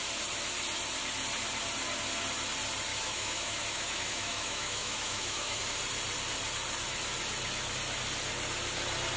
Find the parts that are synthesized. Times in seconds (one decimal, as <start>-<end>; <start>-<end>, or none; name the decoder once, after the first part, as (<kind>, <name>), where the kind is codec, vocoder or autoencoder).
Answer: 2.9-5.6 (autoencoder, DAC-VAE)